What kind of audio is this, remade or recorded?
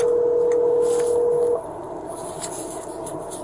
recorded